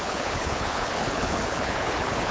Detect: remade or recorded remade